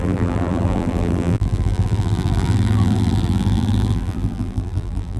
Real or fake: fake